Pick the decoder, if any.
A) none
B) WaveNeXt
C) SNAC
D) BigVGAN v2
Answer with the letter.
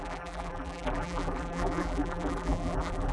D